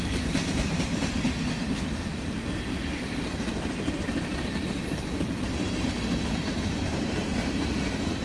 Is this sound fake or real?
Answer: fake